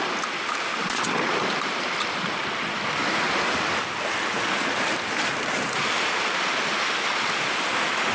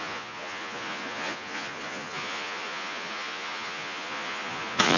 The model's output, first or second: second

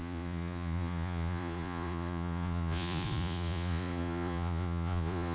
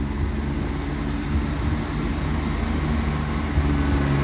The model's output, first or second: first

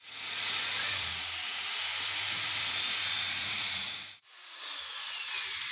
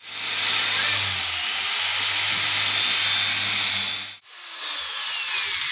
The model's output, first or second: first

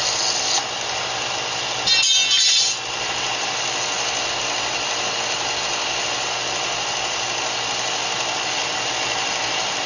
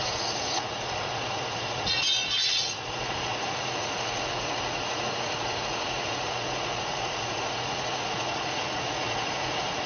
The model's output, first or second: second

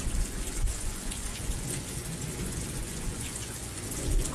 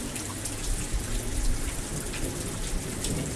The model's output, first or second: first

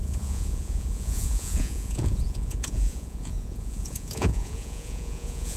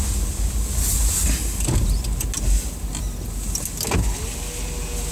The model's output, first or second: first